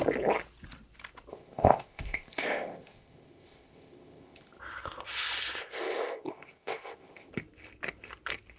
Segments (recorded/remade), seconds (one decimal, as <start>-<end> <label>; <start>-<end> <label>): 0.0-1.3 recorded; 1.3-4.6 remade; 4.6-5.6 recorded; 5.6-7.3 remade; 7.3-8.6 recorded